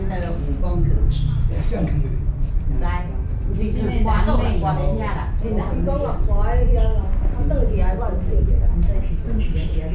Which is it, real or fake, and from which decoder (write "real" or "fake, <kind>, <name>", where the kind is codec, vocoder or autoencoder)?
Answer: real